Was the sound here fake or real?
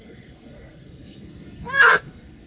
fake